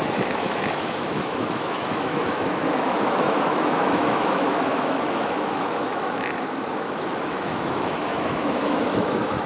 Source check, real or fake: fake